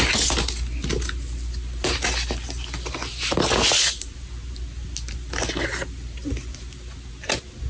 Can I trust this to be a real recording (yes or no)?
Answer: yes